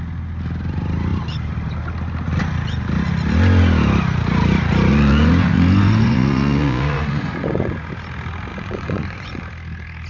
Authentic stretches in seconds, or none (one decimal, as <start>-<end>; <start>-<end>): 0.0-4.9; 7.9-8.5; 9.4-10.1